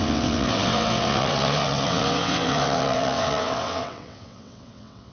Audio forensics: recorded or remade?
remade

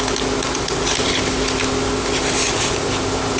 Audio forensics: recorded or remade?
recorded